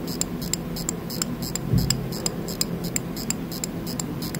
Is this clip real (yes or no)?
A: yes